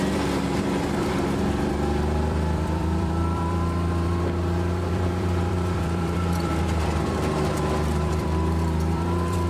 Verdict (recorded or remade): remade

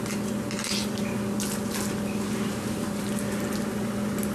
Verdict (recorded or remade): recorded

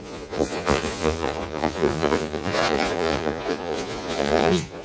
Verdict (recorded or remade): remade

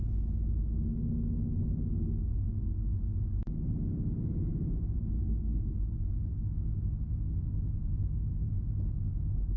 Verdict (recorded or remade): recorded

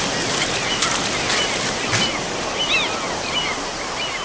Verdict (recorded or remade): recorded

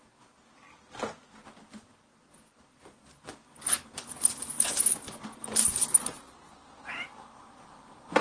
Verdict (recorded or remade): recorded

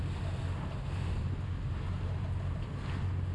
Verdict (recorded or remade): recorded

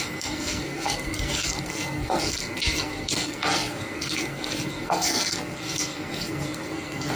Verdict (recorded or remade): remade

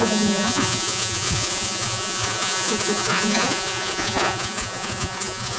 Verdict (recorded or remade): remade